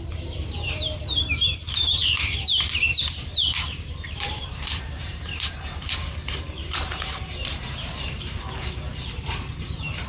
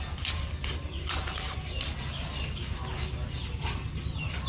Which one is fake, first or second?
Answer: first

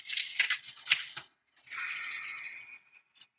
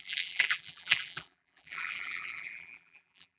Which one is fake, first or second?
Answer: second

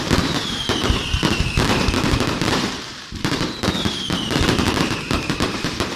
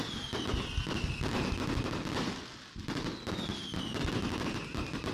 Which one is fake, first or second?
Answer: first